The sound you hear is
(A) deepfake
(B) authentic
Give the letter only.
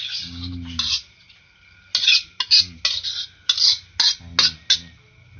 B